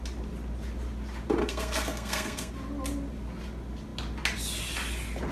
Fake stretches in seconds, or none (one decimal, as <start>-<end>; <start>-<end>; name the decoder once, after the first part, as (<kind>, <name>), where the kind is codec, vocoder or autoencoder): 1.4-2.5 (codec, SNAC)

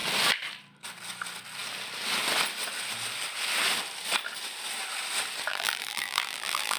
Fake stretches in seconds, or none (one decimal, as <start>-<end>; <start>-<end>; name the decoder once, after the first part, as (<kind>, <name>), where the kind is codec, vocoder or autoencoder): 5.5-6.8 (vocoder, BigVGAN v2)

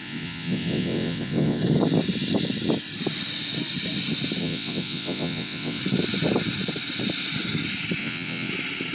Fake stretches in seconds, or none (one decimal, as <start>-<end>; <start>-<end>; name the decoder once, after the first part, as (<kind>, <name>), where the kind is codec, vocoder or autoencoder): 0.0-1.6 (vocoder, WaveNeXt); 4.4-5.8; 8.0-8.5

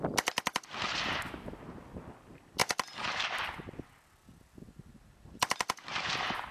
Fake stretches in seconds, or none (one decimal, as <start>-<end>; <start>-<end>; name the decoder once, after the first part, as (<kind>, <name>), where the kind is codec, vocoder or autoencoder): none

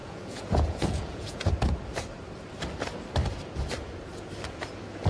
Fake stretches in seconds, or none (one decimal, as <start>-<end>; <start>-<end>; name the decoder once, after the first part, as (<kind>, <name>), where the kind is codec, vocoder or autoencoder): 0.0-1.5 (vocoder, Vocos)

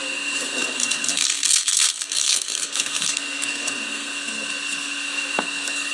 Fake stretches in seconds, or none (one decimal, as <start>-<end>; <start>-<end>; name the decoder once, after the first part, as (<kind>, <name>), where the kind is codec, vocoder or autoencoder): 0.0-5.9 (codec, SNAC)

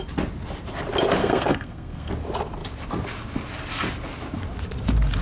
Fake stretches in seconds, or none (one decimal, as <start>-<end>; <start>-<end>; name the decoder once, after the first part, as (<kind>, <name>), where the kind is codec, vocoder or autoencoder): 1.2-2.1 (codec, SNAC)